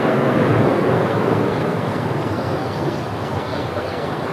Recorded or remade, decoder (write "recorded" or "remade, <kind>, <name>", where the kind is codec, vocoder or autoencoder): remade, codec, SNAC